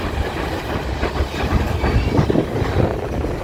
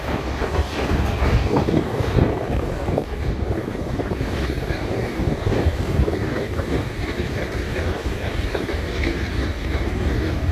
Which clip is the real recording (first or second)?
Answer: first